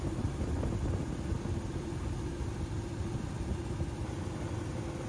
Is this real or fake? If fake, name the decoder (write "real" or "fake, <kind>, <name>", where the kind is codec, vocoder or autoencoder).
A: real